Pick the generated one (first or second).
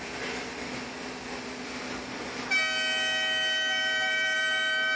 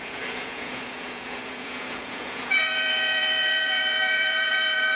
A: second